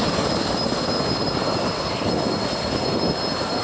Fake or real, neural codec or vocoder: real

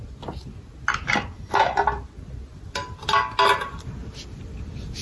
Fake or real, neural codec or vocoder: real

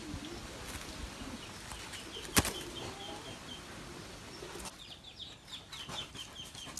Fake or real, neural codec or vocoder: real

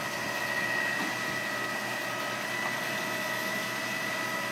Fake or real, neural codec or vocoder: real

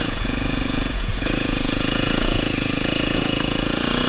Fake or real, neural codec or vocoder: fake, vocoder, Vocos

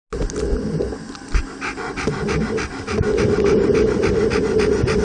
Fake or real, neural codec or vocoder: real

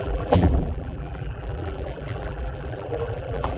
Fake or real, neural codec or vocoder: fake, vocoder, BigVGAN v2